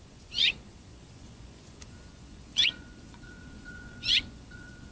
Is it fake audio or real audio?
fake